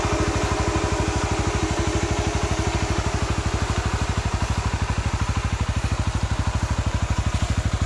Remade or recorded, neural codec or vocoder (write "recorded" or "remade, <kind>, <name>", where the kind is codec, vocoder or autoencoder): recorded